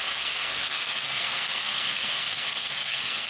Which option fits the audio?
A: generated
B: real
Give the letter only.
A